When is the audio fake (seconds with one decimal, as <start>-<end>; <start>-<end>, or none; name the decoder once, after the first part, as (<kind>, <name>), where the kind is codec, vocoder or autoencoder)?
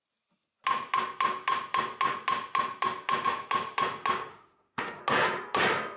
4.3-5.0 (autoencoder, DAC-VAE)